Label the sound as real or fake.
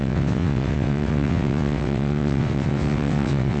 fake